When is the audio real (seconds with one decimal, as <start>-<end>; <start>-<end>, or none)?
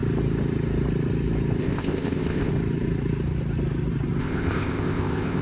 0.0-1.6; 2.5-4.2